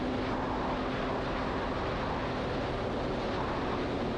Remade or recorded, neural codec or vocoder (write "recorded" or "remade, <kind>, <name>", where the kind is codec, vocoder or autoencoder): recorded